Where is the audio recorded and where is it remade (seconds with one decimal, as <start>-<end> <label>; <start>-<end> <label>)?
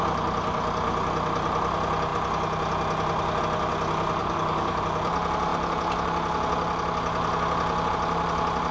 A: 0.0-4.2 recorded; 4.2-4.8 remade; 4.8-8.7 recorded